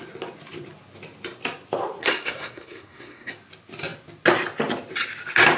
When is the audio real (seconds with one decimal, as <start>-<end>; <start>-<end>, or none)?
0.0-2.0; 3.3-5.6